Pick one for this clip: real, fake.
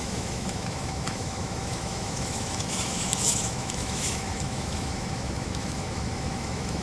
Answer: fake